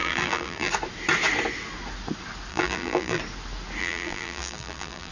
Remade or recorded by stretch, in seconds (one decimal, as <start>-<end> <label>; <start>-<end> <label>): 0.0-0.7 remade; 0.7-2.5 recorded; 2.5-3.2 remade; 3.2-3.8 recorded; 3.8-5.1 remade